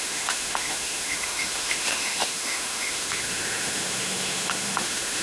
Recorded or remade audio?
remade